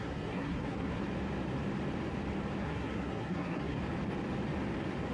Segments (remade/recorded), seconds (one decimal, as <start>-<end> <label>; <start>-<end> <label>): 0.0-1.0 remade; 1.0-2.6 recorded; 2.6-3.8 remade; 3.8-5.1 recorded